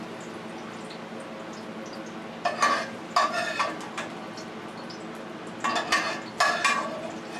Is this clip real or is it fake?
real